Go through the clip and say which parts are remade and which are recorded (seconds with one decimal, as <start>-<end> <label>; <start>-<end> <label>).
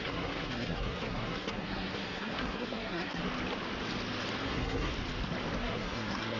0.0-3.2 remade; 3.2-4.4 recorded; 4.4-4.9 remade; 4.9-5.6 recorded; 5.6-6.4 remade